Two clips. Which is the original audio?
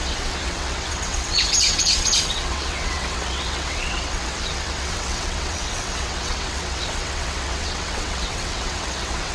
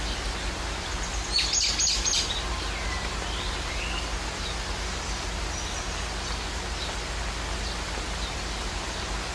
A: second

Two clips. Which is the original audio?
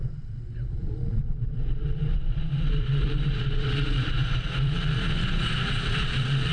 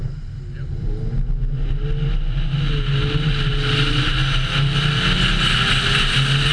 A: second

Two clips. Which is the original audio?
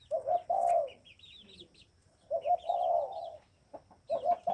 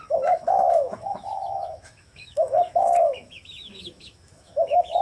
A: first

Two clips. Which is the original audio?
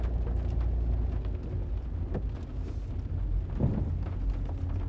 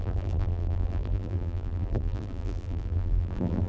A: first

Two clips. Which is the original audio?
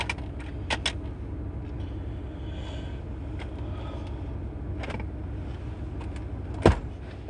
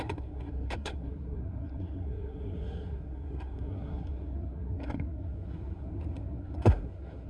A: first